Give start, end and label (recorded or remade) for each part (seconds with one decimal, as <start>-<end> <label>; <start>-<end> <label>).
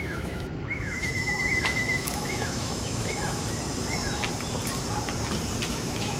0.0-3.4 remade; 3.4-5.7 recorded; 5.7-6.2 remade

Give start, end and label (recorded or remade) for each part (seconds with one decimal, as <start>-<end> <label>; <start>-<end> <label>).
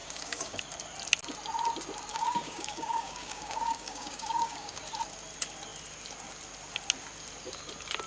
0.0-0.6 remade; 0.6-2.1 recorded; 2.1-4.8 remade; 4.8-8.1 recorded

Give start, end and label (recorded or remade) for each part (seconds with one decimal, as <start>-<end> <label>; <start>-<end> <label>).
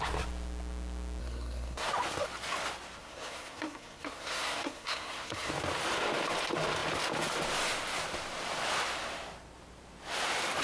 0.0-1.2 recorded; 1.2-1.9 remade; 1.9-3.0 recorded; 3.0-5.5 remade; 5.5-10.6 recorded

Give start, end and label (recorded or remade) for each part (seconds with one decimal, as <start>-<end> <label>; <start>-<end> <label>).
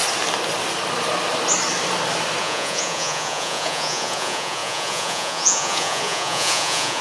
0.0-2.4 recorded; 2.4-7.0 remade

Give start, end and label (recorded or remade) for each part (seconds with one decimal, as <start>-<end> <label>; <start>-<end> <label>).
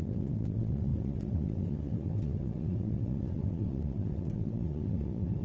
0.0-5.4 remade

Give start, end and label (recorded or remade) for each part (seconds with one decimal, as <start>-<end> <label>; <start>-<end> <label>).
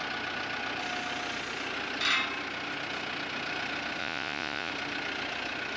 0.0-4.0 recorded; 4.0-4.7 remade; 4.7-5.8 recorded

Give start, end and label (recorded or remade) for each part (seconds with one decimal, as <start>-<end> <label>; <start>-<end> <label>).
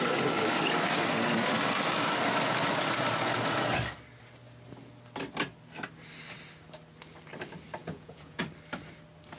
0.0-7.8 recorded; 7.8-8.4 remade; 8.4-9.4 recorded